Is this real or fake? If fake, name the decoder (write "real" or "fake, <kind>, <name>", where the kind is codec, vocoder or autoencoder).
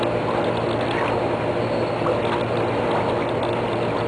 real